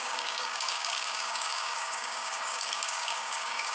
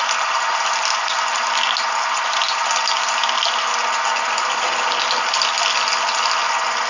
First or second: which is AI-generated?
first